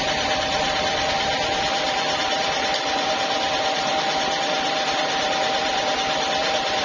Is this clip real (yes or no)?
no